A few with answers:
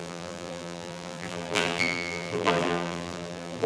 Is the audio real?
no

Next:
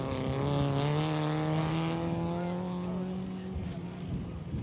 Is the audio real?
yes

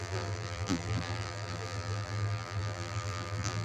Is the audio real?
no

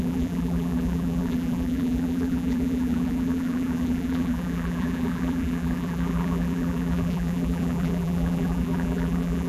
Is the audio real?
no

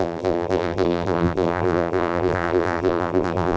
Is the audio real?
no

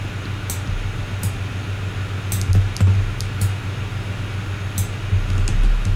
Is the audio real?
yes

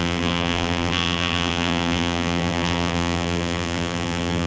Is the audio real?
no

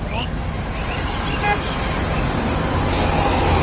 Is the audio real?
yes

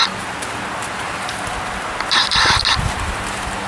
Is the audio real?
yes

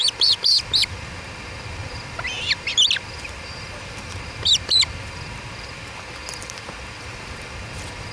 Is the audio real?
no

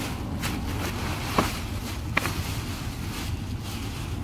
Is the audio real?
yes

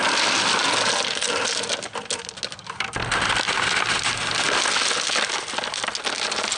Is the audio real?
yes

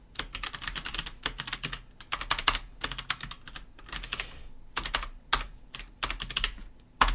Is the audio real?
yes